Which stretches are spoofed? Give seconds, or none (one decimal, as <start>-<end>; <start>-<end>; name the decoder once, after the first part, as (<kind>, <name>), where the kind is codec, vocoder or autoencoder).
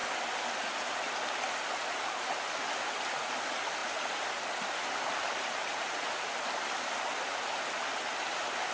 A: none